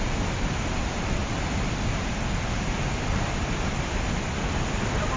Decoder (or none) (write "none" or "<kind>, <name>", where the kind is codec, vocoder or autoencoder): none